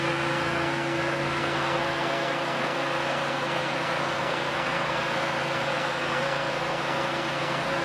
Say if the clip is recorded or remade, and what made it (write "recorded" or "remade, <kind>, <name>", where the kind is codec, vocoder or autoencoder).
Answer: remade, codec, SNAC